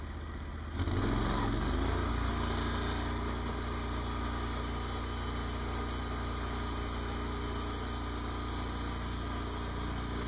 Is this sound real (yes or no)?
yes